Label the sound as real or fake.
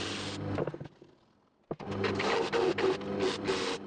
real